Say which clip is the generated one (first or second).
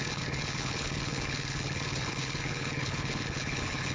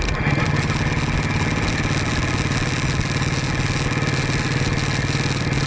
first